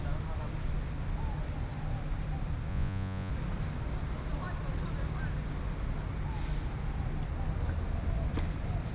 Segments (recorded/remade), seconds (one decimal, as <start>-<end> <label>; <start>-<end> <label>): 0.0-2.7 recorded; 2.7-3.3 remade; 3.3-8.9 recorded